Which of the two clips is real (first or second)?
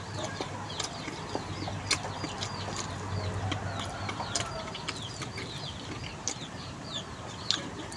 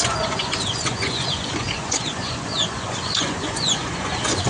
first